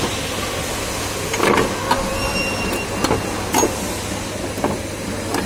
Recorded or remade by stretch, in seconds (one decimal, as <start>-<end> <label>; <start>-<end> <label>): 0.0-5.5 recorded